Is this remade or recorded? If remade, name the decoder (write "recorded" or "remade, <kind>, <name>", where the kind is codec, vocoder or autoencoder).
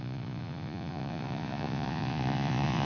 remade, vocoder, Vocos